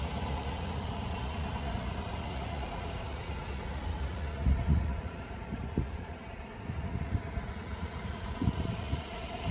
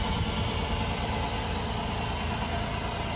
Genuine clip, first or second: second